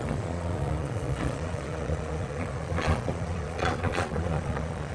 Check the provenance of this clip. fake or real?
fake